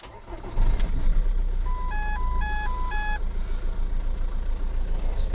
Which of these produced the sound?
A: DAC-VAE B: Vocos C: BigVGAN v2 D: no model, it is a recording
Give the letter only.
D